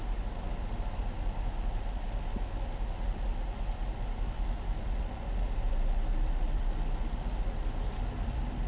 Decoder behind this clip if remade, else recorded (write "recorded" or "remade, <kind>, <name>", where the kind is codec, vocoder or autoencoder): recorded